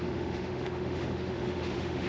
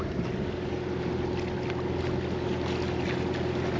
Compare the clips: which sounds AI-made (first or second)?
first